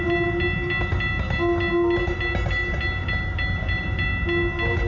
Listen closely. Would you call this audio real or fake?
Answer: real